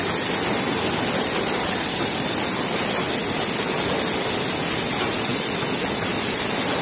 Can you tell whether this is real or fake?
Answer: real